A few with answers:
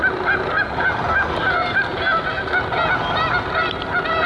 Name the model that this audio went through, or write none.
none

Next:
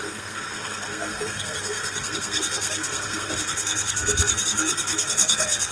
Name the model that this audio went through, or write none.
codec, SNAC